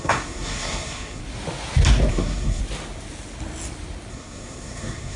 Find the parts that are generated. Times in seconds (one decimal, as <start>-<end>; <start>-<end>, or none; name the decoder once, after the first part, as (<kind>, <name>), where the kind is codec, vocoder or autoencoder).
0.0-1.2 (codec, SNAC); 2.1-2.6; 4.1-5.2